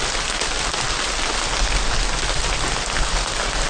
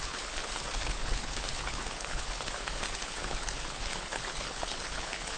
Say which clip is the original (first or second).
first